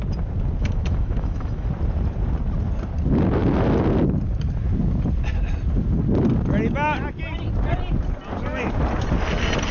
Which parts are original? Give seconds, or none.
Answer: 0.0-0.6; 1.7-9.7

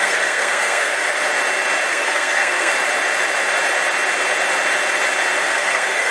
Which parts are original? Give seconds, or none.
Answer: 1.0-1.9; 2.7-5.4